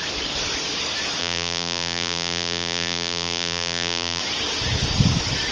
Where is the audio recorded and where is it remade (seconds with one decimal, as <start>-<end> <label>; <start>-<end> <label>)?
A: 0.0-1.2 recorded; 1.2-4.2 remade; 4.2-5.5 recorded